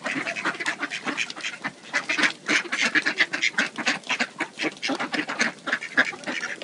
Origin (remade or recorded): recorded